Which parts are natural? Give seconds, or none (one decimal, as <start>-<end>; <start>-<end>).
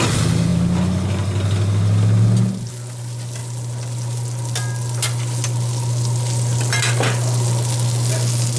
0.0-8.6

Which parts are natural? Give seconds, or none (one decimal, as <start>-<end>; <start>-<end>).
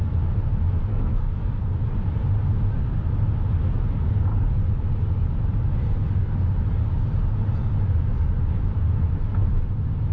0.0-0.8; 1.6-10.1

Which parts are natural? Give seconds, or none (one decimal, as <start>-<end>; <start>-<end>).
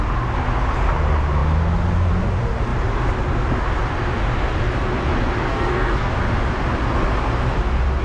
0.0-5.5; 6.1-8.0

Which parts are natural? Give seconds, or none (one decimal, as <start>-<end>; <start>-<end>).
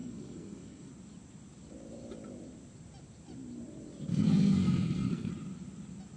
0.9-4.1; 5.3-6.2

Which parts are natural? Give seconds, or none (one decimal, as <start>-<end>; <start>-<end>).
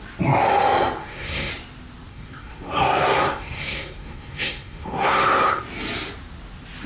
0.0-1.0; 1.5-2.1; 5.6-6.9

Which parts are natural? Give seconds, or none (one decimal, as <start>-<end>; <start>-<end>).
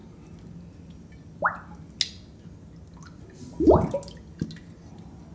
0.0-5.3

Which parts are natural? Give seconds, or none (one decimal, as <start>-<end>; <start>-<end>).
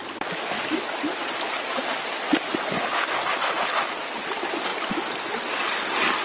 0.0-6.2